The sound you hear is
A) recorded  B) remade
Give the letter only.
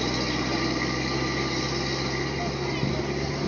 A